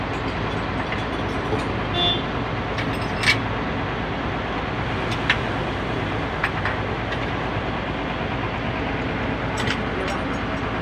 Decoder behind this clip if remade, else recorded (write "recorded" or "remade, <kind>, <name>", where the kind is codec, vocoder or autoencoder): recorded